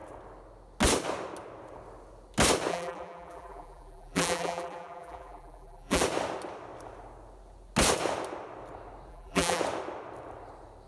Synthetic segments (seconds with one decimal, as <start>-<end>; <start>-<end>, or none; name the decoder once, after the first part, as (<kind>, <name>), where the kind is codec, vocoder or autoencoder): 2.7-6.0 (vocoder, BigVGAN v2); 9.1-9.6